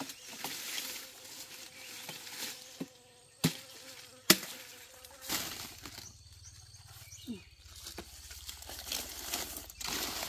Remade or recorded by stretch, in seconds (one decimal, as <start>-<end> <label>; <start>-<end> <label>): 0.0-10.3 recorded